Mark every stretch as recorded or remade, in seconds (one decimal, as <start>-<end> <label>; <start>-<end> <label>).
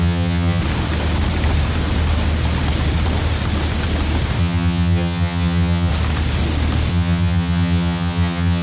0.0-0.6 remade; 0.6-4.4 recorded; 4.4-5.9 remade; 5.9-6.9 recorded; 6.9-8.6 remade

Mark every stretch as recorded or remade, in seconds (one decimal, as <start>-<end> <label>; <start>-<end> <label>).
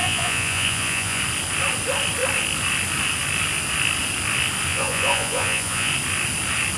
0.0-1.2 remade; 1.2-4.7 recorded; 4.7-5.9 remade; 5.9-6.8 recorded